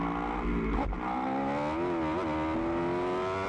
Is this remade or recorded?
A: recorded